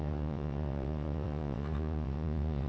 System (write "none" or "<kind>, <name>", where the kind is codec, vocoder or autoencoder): vocoder, WaveNeXt